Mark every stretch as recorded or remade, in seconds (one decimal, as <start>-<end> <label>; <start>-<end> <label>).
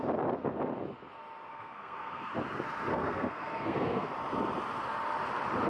0.0-1.5 recorded; 1.5-2.3 remade; 2.3-2.9 recorded; 2.9-4.1 remade; 4.1-5.7 recorded